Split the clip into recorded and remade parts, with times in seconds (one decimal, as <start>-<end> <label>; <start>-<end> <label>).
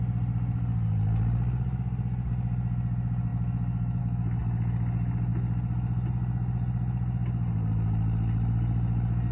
0.0-9.3 recorded